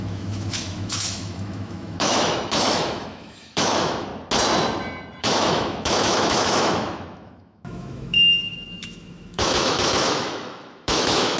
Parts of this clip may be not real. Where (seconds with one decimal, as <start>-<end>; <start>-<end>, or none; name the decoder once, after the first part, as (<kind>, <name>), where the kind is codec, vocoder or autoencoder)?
0.0-4.1 (autoencoder, DAC-VAE); 5.2-11.4